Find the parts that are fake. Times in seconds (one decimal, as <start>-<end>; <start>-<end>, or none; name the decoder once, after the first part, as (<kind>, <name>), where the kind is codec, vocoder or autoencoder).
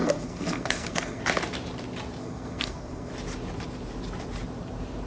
0.0-1.2 (codec, SNAC); 2.2-3.1